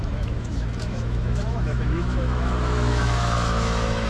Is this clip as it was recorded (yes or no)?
no